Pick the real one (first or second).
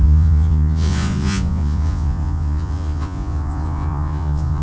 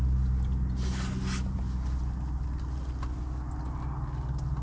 second